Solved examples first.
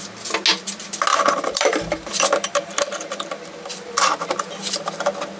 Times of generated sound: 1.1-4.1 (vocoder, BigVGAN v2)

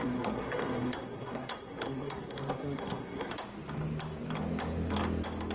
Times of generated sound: 0.0-3.3 (codec, SNAC)

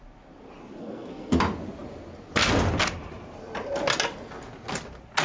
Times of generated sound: 0.8-1.4 (codec, SNAC)

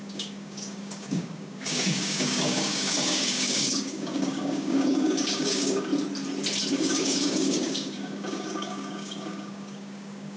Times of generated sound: 0.0-5.9 (codec, DAC); 6.7-10.4

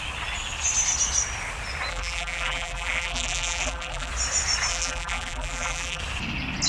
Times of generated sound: 1.9-4.1 (vocoder, BigVGAN v2); 4.7-6.0

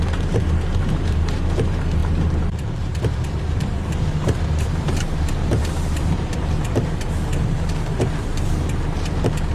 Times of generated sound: 0.0-9.5 (vocoder, BigVGAN v2)

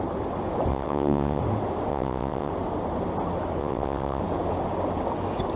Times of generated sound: 0.7-1.4 (vocoder, WaveNeXt); 1.9-2.5; 3.6-4.2

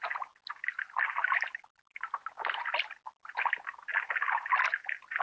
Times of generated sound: 1.9-2.6 (vocoder, BigVGAN v2)